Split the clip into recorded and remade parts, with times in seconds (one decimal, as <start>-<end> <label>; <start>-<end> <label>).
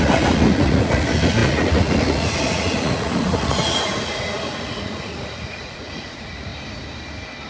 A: 0.0-6.5 remade; 6.5-7.5 recorded